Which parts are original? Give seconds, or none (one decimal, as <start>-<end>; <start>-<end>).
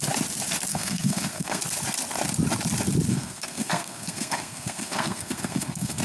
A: 0.0-0.7; 1.6-3.1